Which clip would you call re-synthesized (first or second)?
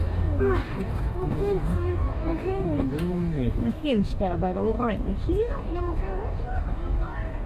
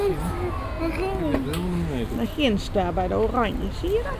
first